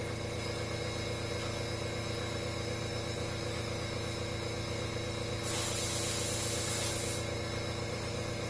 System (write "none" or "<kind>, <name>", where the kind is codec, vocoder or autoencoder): none